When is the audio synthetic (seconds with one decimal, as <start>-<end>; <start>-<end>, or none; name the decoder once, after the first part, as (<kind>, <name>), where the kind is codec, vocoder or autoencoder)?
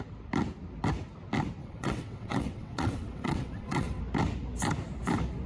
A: 1.6-4.0 (vocoder, WaveNeXt)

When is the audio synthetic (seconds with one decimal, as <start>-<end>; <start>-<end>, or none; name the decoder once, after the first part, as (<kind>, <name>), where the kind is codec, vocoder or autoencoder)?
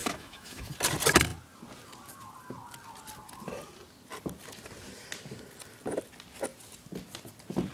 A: 0.0-0.7 (autoencoder, DAC-VAE)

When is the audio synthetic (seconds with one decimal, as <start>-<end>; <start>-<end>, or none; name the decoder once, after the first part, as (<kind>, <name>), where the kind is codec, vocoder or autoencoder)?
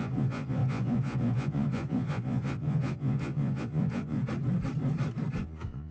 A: 0.0-4.2 (vocoder, Vocos); 5.4-5.9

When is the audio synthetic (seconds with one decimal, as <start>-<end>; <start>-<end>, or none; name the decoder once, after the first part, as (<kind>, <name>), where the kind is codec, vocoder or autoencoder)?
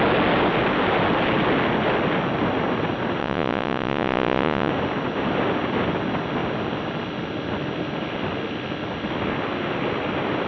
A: 3.2-4.7 (vocoder, Vocos)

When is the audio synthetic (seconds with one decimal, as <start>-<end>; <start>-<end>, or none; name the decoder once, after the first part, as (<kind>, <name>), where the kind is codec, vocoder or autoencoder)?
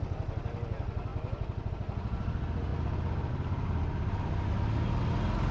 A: none